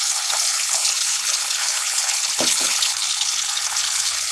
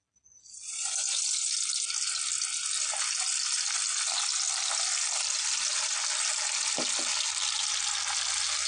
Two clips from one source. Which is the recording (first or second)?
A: second